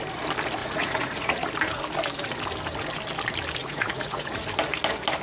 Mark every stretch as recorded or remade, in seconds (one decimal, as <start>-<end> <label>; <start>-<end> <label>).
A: 0.0-0.6 recorded; 0.6-1.5 remade; 1.5-3.6 recorded; 3.6-4.4 remade; 4.4-5.2 recorded